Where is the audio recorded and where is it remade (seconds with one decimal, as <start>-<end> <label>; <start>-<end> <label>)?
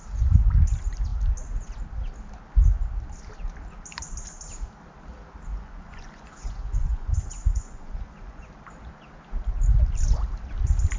0.0-5.5 recorded; 5.5-8.4 remade; 8.4-11.0 recorded